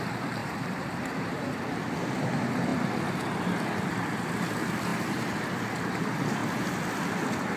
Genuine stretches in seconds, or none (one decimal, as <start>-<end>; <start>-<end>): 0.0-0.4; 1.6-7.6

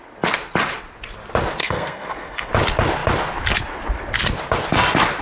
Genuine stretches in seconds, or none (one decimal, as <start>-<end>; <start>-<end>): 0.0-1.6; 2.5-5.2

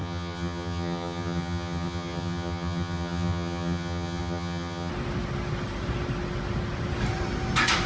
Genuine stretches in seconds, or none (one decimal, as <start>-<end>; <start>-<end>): 4.9-7.9

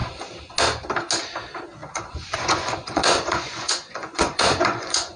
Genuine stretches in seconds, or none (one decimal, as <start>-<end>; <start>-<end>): 0.0-1.8

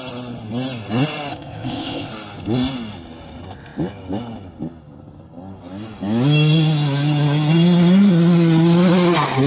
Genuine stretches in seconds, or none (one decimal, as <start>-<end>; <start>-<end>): 0.0-1.3; 2.1-9.5

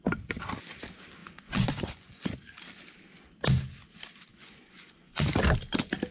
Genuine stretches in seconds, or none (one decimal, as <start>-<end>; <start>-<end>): 0.0-1.2; 2.2-4.3; 5.3-6.1